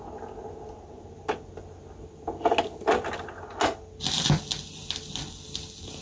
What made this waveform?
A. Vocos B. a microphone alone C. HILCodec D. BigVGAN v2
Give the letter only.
B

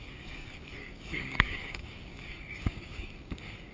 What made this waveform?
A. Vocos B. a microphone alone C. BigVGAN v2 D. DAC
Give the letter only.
D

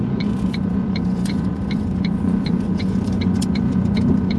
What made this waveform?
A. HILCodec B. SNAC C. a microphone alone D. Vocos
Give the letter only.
D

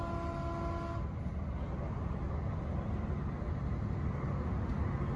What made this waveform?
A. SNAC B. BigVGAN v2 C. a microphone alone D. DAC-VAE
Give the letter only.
C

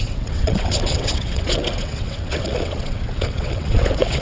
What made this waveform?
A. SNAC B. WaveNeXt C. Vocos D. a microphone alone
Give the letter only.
B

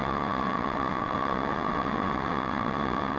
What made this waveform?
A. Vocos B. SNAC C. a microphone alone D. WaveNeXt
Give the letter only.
D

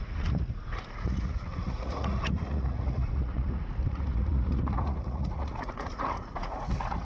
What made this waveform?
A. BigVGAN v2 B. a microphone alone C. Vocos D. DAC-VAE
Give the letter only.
C